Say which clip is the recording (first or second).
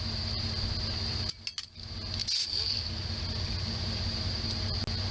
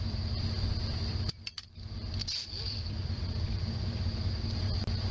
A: first